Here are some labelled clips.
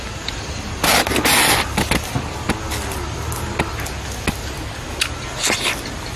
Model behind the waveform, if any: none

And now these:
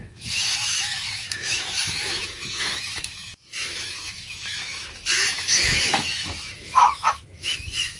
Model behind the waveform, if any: autoencoder, DAC-VAE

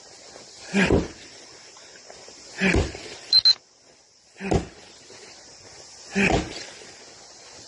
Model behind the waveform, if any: none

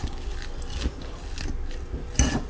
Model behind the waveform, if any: none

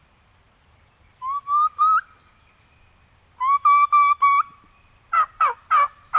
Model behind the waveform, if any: none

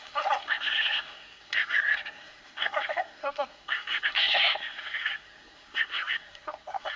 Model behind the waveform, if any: codec, SNAC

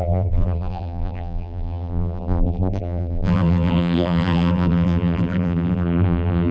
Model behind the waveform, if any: vocoder, BigVGAN v2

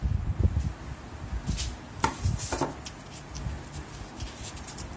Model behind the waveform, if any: none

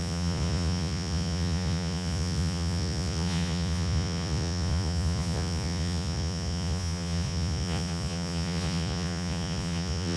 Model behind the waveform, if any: vocoder, Vocos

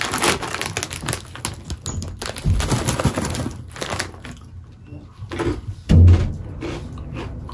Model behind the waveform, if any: none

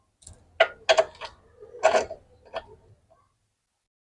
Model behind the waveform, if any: none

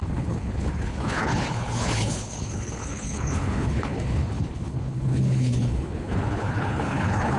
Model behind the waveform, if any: codec, HILCodec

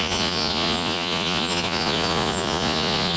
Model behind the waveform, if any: vocoder, Vocos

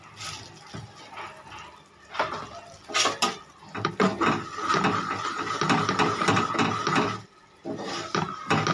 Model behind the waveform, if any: none